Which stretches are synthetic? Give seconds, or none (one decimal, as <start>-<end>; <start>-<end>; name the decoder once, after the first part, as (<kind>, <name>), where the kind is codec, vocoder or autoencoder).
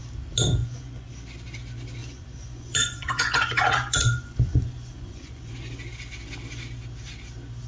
0.6-1.1 (vocoder, Vocos); 2.0-5.5